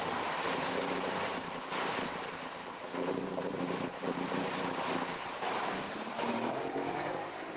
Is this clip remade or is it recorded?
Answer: remade